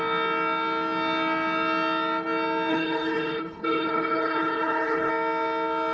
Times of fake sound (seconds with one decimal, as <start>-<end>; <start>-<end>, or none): 2.7-5.1